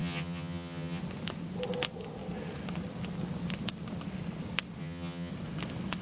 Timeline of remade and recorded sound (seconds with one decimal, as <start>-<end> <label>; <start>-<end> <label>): 0.0-1.0 remade; 1.0-4.8 recorded; 4.8-5.3 remade; 5.3-6.0 recorded